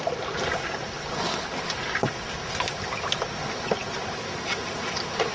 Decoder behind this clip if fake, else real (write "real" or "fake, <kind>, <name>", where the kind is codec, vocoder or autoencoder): real